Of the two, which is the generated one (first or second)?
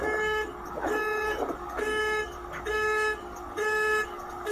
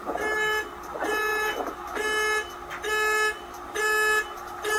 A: first